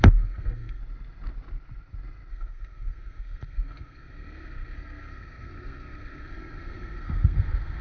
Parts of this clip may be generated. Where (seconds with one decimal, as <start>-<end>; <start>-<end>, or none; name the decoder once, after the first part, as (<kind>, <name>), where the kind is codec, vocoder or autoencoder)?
0.0-0.8 (codec, SNAC); 2.3-7.8

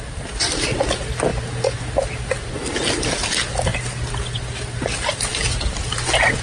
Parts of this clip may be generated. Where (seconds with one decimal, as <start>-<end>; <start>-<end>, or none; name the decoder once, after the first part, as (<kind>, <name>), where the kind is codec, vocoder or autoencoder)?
none